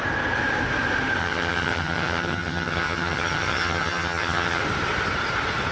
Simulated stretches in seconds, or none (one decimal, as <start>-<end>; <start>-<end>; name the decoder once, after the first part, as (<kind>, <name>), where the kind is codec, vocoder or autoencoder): 1.2-4.6 (vocoder, HiFi-GAN)